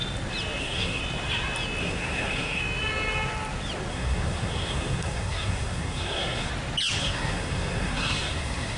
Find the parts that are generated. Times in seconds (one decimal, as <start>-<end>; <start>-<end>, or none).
0.6-1.0; 1.8-2.6; 3.9-6.5; 7.0-8.8